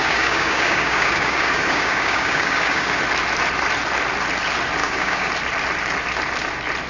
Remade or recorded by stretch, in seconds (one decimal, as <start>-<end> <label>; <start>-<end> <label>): 0.0-3.0 remade; 3.0-4.8 recorded; 4.8-5.3 remade; 5.3-6.9 recorded